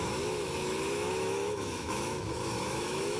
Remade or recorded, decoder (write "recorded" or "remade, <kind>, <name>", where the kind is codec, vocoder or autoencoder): remade, autoencoder, DAC-VAE